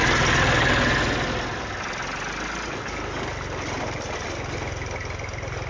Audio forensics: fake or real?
real